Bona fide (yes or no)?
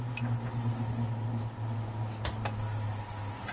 yes